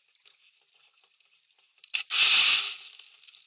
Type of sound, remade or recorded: recorded